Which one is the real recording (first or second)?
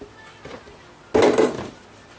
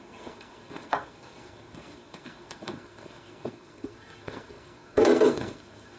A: first